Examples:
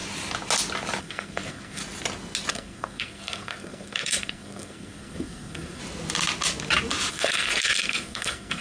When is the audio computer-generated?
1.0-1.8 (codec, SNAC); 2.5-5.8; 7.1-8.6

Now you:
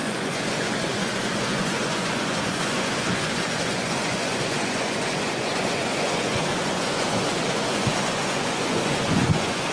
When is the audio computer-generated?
0.0-9.7 (vocoder, Vocos)

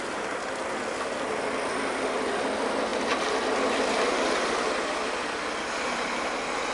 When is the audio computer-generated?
none

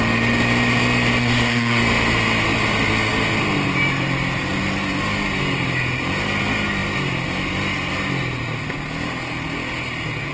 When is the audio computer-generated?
1.2-1.8 (codec, SNAC)